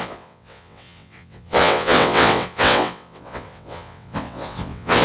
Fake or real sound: fake